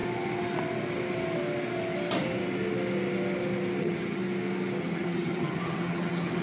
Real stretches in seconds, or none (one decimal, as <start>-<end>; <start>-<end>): 0.0-3.8; 4.2-4.8